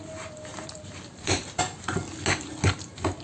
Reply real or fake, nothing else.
real